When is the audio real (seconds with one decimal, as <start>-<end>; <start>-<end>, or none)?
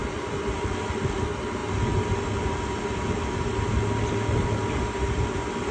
0.0-5.7